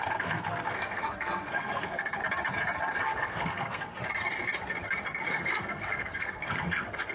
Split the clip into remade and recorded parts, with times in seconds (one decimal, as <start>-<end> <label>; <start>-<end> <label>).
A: 0.0-2.2 remade; 2.2-3.0 recorded; 3.0-3.9 remade; 3.9-5.3 recorded; 5.3-7.1 remade